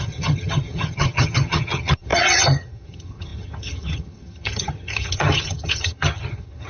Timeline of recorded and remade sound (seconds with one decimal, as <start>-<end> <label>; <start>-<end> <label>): 0.0-6.7 remade

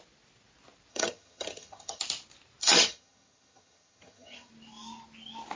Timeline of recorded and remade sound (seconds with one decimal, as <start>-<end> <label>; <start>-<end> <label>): 0.0-0.9 recorded; 0.9-2.0 remade; 2.0-2.6 recorded; 2.6-4.5 remade; 4.5-5.6 recorded